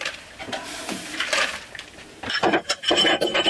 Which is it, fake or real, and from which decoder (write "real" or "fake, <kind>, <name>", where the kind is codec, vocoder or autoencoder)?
fake, vocoder, BigVGAN v2